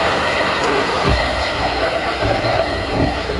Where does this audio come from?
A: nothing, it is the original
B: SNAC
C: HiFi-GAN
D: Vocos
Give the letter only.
B